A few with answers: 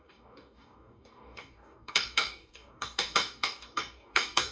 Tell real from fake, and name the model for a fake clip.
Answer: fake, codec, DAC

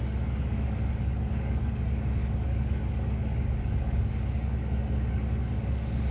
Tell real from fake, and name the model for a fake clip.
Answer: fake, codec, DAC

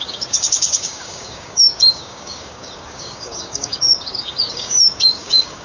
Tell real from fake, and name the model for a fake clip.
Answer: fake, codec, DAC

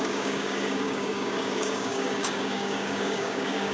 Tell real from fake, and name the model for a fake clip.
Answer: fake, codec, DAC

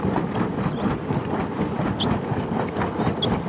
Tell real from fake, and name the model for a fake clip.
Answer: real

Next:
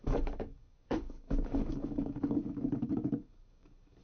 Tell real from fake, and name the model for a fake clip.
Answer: fake, codec, DAC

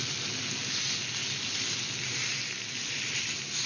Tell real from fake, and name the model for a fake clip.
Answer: real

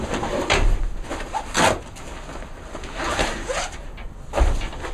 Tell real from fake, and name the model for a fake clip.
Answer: real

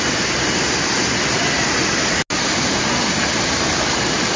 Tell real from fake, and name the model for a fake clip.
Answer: real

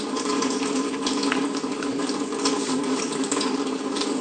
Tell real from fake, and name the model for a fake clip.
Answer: fake, codec, DAC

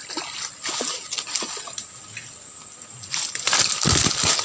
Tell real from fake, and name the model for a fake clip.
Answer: real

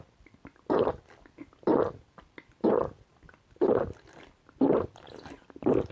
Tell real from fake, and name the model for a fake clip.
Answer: real